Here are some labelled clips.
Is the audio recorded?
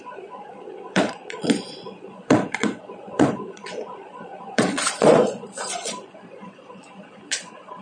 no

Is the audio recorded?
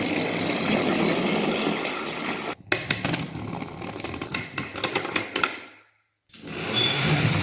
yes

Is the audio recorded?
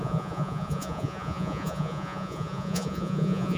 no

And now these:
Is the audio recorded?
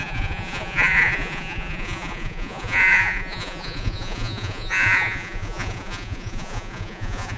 no